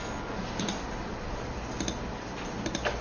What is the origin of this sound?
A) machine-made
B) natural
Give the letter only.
B